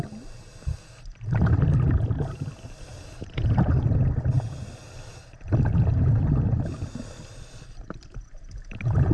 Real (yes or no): yes